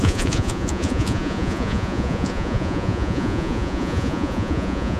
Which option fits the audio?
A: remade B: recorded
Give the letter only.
A